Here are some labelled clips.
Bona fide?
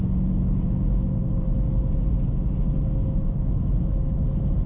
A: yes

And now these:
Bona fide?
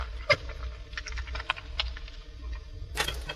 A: yes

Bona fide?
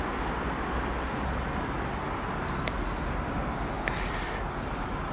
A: yes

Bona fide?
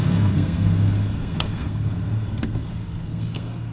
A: no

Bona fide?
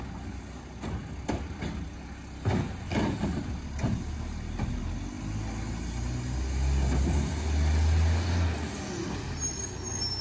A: yes